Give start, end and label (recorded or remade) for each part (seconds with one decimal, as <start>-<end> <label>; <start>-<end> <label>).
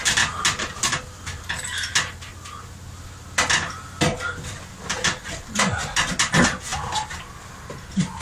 0.0-8.2 recorded